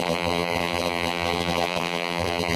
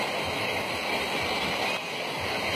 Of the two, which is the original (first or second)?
second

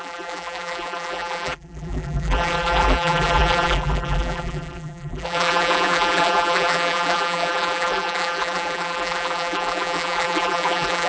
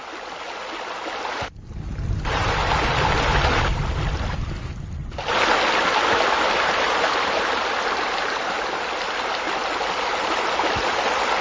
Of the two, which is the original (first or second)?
second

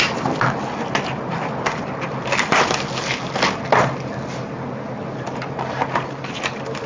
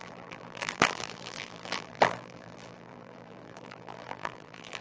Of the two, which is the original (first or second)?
first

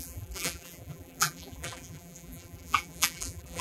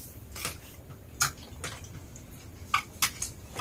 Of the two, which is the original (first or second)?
second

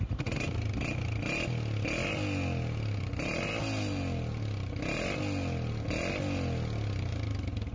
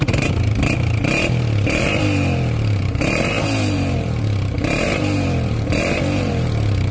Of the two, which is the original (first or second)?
first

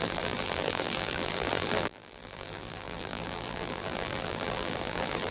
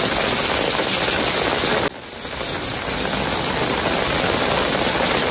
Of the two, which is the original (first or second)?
second